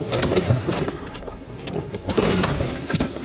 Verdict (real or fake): fake